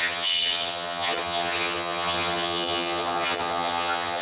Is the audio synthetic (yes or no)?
yes